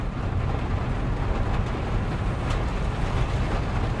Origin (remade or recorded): recorded